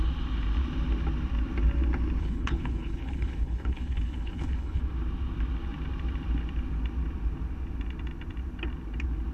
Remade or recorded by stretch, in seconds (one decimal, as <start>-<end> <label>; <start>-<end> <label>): 0.0-2.2 recorded; 2.2-4.8 remade; 4.8-9.3 recorded